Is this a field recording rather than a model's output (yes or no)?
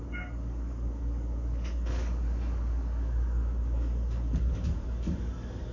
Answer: no